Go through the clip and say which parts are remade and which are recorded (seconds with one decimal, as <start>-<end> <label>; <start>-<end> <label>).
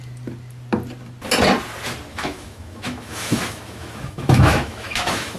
0.0-2.1 recorded; 2.1-5.4 remade